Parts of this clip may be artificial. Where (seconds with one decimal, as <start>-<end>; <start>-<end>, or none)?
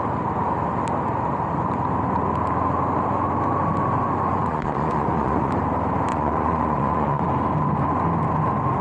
4.3-5.5; 6.1-7.2